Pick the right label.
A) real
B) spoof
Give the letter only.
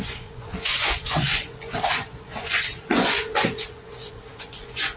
B